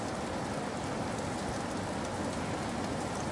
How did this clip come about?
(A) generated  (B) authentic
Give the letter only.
B